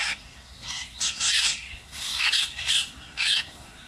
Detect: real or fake fake